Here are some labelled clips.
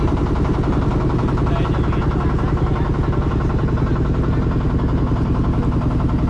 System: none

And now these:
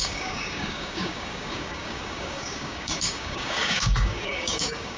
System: codec, DAC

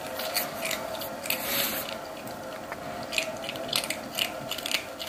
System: none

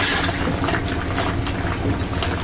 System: none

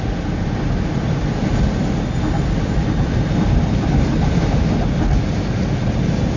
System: none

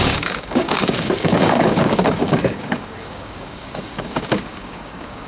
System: codec, DAC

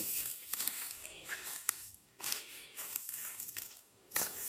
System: codec, DAC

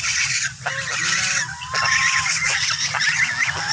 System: none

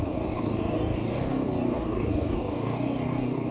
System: codec, DAC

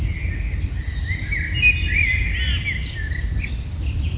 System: none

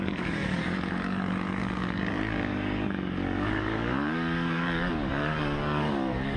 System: codec, DAC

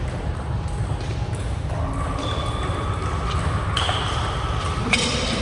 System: none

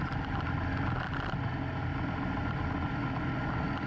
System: none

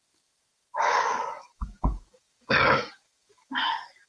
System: codec, DAC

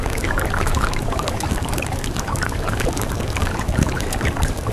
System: codec, DAC